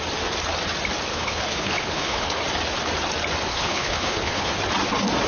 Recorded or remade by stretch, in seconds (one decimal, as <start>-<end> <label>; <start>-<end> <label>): 0.0-1.1 recorded; 1.1-2.4 remade; 2.4-3.5 recorded; 3.5-4.5 remade; 4.5-5.3 recorded